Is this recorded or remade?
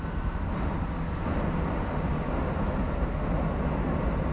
recorded